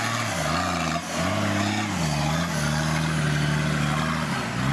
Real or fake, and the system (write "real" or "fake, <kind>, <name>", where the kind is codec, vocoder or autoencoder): real